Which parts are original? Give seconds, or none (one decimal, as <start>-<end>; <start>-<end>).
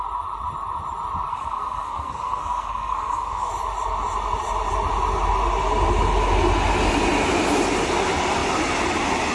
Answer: 0.0-1.3; 3.5-9.3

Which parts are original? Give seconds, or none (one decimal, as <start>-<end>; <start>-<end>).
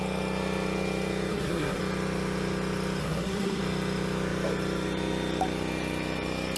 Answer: 0.0-1.3; 1.8-3.0; 3.6-6.6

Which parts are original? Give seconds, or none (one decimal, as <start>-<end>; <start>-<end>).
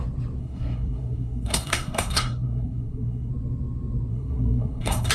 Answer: 0.0-0.4; 3.3-4.1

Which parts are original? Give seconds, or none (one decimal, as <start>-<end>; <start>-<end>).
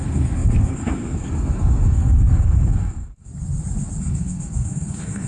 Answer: 3.3-4.0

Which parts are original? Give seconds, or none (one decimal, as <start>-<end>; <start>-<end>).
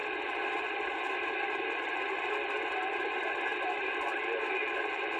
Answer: 0.0-5.2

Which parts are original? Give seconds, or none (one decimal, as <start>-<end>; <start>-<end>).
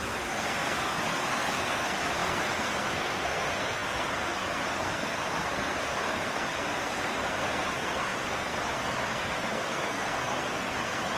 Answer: none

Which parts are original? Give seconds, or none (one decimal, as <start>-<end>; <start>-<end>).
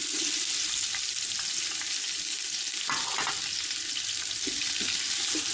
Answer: 0.0-5.5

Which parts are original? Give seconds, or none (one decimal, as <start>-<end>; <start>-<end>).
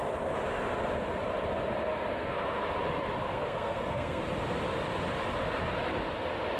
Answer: 0.0-2.1; 2.6-3.3; 4.2-6.6